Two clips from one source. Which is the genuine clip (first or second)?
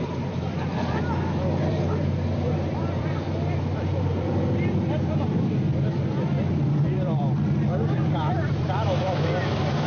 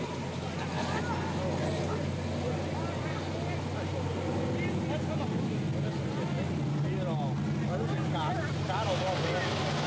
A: second